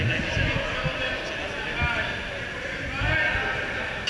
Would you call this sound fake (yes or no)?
no